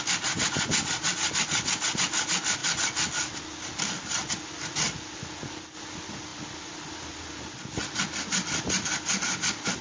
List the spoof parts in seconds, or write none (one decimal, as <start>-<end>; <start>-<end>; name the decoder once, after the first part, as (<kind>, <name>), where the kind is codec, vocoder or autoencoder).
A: none